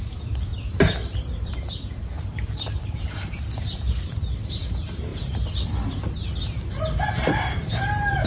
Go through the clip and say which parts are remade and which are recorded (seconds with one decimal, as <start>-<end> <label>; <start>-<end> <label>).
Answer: 0.0-5.1 remade; 5.1-7.1 recorded; 7.1-8.3 remade